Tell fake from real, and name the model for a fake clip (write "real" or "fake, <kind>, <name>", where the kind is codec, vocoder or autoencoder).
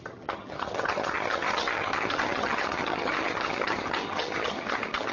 fake, vocoder, HiFi-GAN